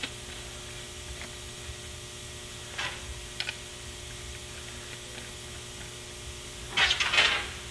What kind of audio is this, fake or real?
real